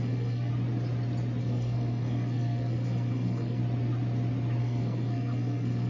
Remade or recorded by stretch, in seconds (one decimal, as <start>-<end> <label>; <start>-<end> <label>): 0.0-0.5 remade; 0.5-1.4 recorded; 1.4-3.6 remade; 3.6-4.6 recorded; 4.6-5.9 remade